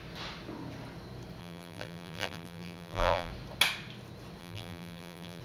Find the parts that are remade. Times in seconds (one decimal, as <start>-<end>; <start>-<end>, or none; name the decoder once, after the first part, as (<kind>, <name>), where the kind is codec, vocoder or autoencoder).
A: 1.4-3.3 (vocoder, BigVGAN v2); 4.4-5.4